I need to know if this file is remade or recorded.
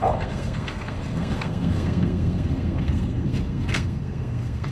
remade